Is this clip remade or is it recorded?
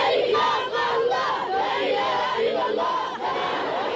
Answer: recorded